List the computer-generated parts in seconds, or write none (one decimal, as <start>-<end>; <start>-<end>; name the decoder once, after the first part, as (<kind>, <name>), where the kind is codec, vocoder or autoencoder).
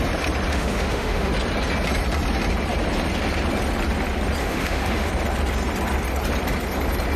0.5-1.3 (autoencoder, DAC-VAE); 4.4-5.1